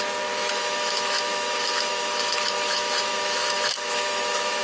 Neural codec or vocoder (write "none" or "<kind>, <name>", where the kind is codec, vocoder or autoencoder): autoencoder, DAC-VAE